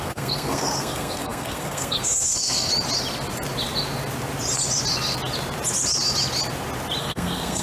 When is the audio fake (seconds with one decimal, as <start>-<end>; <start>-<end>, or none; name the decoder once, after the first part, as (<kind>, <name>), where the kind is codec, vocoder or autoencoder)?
0.0-2.7 (codec, SNAC); 7.0-7.6